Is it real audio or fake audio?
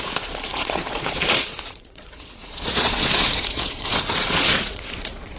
fake